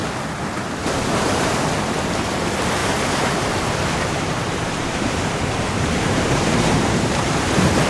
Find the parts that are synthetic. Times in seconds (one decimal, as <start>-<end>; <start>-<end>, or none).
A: 0.8-1.9; 2.8-7.5